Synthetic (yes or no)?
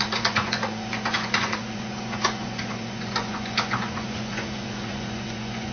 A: yes